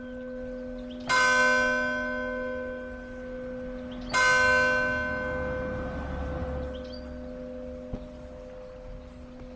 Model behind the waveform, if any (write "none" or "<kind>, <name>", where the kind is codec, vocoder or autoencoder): none